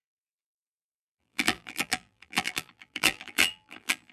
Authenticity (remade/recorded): remade